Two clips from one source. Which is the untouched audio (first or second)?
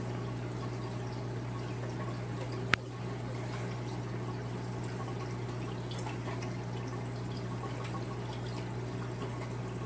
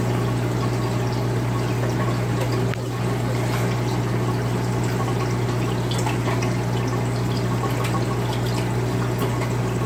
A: second